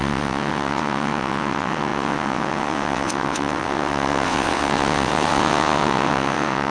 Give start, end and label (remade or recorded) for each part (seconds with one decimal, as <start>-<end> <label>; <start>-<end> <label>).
0.0-6.7 remade